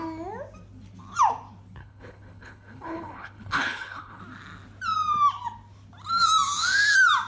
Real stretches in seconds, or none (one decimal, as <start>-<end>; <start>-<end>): 0.0-1.8; 4.2-7.3